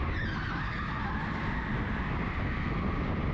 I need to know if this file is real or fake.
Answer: real